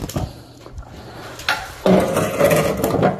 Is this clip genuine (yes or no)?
yes